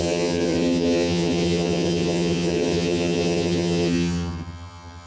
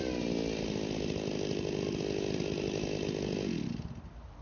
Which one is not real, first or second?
first